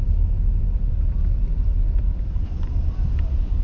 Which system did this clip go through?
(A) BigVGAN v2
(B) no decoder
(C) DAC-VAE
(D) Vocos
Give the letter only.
A